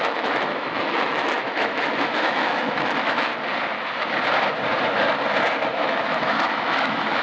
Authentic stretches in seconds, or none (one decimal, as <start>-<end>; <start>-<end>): 3.3-5.7